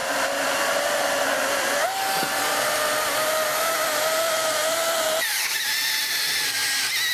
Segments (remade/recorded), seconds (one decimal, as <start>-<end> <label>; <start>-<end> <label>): 0.0-7.1 recorded